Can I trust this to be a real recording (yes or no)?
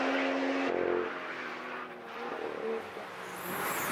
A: yes